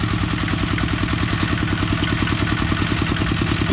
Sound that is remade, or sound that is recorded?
recorded